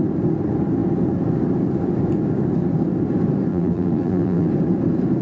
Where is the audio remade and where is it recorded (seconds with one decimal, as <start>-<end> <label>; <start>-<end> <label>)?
0.0-3.5 recorded; 3.5-4.5 remade; 4.5-5.2 recorded